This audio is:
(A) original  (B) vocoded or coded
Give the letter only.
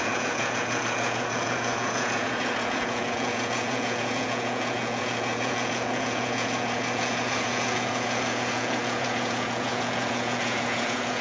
B